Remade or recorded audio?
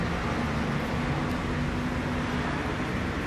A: recorded